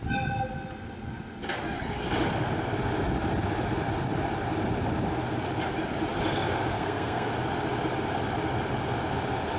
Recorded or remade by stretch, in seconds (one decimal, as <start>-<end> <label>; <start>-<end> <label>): 0.0-6.7 recorded; 6.7-7.3 remade; 7.3-9.6 recorded